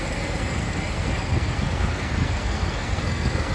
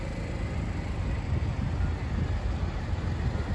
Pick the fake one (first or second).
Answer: first